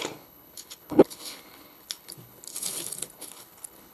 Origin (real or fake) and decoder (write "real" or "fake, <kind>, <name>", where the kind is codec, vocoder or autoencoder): fake, codec, HILCodec